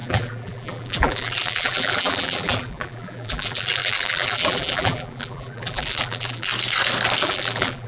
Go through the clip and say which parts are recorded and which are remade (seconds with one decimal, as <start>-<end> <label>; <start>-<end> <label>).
0.0-6.5 remade; 6.5-7.2 recorded; 7.2-7.9 remade